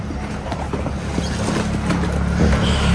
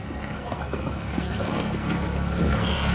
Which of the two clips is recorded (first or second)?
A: first